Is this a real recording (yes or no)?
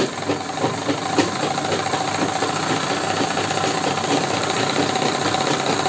yes